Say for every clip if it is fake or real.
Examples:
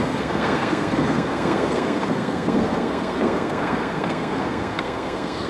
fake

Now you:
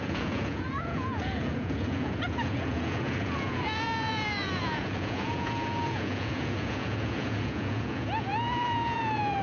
fake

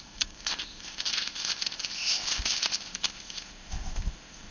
fake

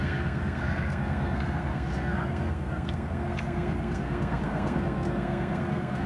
fake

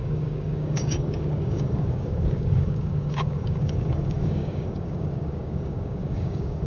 fake